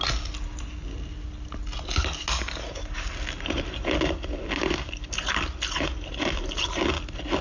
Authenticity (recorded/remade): recorded